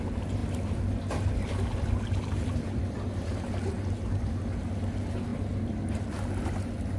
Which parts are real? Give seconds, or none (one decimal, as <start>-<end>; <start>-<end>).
0.0-7.0